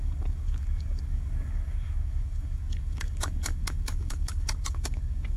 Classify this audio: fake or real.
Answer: fake